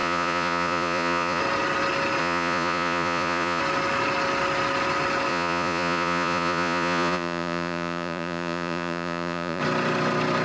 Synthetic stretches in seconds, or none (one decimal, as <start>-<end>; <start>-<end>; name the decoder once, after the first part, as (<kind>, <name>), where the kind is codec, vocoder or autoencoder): 0.0-1.4 (vocoder, Vocos); 2.2-3.6; 5.3-9.6